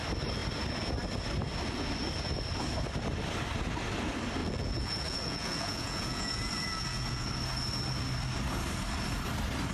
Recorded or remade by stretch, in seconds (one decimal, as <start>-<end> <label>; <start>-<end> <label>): 0.0-4.4 recorded; 4.4-7.3 remade; 7.3-9.7 recorded